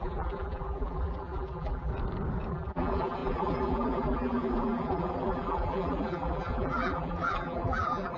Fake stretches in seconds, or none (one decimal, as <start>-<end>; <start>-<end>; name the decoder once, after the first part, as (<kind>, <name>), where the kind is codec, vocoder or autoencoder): 0.0-1.9 (vocoder, BigVGAN v2); 2.5-8.2